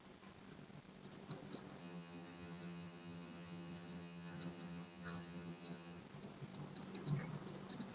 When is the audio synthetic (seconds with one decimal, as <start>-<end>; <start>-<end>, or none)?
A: 1.8-6.0